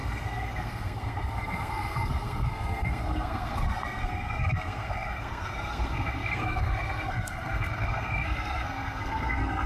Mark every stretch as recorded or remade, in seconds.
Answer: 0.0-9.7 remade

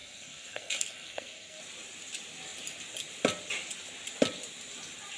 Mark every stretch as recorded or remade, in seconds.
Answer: 0.0-1.6 remade; 1.6-5.2 recorded

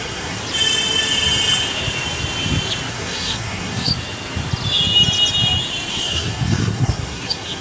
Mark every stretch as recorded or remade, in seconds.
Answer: 0.0-0.4 remade; 0.4-2.9 recorded; 2.9-3.9 remade; 3.9-5.9 recorded; 5.9-7.6 remade

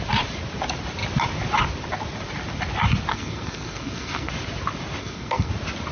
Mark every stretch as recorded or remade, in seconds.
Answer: 0.0-3.1 recorded; 3.1-4.3 remade; 4.3-5.0 recorded; 5.0-5.5 remade; 5.5-5.9 recorded

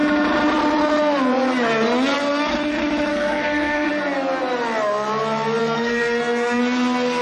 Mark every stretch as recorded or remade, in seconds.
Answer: 0.0-3.1 recorded; 3.1-3.9 remade; 3.9-5.6 recorded; 5.6-6.6 remade; 6.6-7.2 recorded

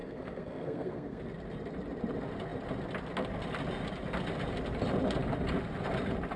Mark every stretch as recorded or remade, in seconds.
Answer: 0.0-1.2 remade; 1.2-6.4 recorded

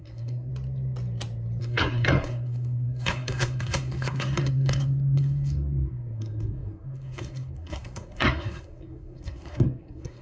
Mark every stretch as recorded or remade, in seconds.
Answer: 0.0-0.5 remade; 0.5-1.6 recorded; 1.6-10.2 remade

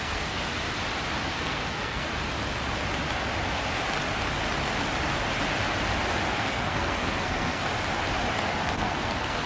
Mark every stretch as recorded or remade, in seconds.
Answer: 0.0-0.5 remade; 0.5-1.3 recorded; 1.3-2.1 remade; 2.1-6.4 recorded; 6.4-7.7 remade; 7.7-8.6 recorded; 8.6-9.5 remade